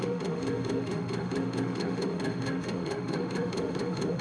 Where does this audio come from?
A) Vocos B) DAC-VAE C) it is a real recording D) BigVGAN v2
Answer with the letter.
B